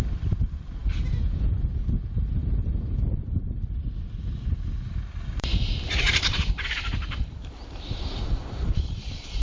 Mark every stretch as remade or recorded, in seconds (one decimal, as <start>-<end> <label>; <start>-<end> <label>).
0.0-0.8 remade; 0.8-5.3 recorded; 5.3-9.4 remade